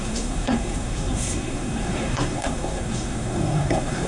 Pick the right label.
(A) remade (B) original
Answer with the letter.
A